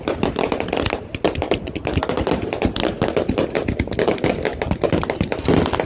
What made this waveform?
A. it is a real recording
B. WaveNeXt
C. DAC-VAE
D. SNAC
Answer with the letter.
A